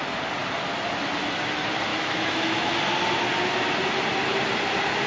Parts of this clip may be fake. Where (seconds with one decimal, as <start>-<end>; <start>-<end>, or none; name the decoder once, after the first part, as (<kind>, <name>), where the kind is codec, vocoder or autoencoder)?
1.9-2.7 (autoencoder, DAC-VAE)